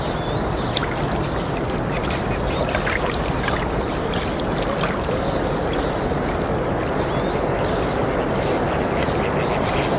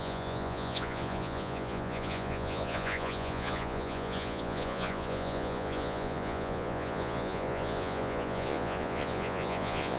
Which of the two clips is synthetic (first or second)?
second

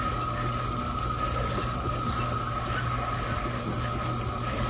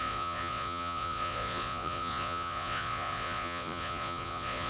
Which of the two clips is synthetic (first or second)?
second